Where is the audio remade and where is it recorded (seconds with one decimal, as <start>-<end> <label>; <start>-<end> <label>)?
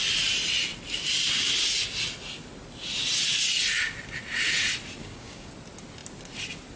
0.0-5.0 recorded; 5.0-5.5 remade; 5.5-6.8 recorded